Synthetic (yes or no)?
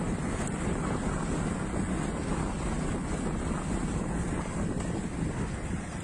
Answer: no